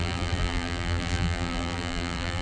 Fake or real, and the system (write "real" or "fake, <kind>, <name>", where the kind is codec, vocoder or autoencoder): fake, vocoder, BigVGAN v2